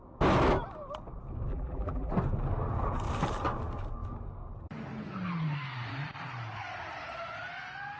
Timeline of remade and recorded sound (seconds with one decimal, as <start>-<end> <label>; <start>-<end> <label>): 0.0-1.5 recorded; 1.5-2.1 remade; 2.1-8.0 recorded